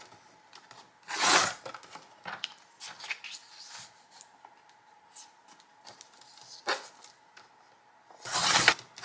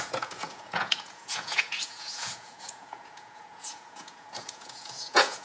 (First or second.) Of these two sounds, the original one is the first